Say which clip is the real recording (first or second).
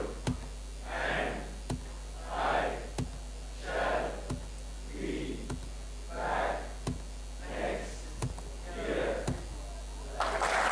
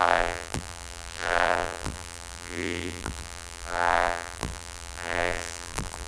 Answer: first